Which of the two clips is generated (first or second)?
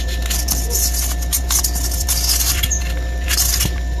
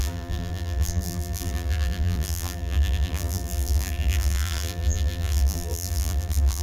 second